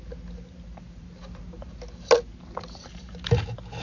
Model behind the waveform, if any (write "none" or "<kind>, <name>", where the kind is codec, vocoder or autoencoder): none